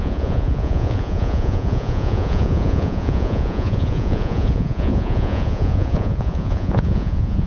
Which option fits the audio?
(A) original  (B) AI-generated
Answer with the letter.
B